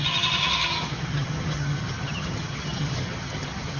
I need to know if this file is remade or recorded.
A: remade